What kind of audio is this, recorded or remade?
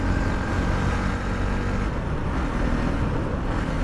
recorded